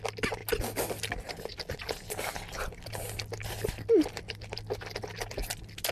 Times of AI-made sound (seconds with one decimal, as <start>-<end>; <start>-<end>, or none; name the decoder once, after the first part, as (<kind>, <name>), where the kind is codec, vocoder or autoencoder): none